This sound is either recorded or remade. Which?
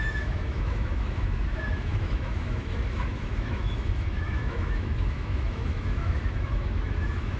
remade